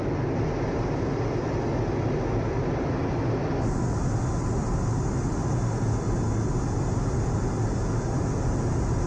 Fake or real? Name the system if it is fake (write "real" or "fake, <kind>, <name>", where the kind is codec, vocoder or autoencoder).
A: real